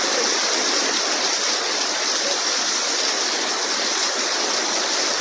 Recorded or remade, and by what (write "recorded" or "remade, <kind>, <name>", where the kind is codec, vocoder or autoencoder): recorded